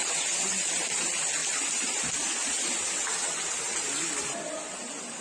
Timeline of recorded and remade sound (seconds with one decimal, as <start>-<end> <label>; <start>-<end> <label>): 0.0-0.7 remade; 0.7-5.2 recorded